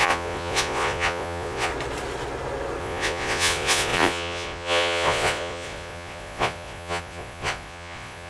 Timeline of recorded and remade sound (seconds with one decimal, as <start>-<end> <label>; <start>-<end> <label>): 0.0-1.7 remade; 1.7-2.8 recorded; 2.8-8.3 remade